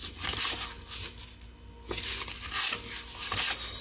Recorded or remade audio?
recorded